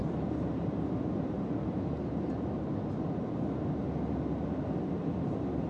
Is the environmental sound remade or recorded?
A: recorded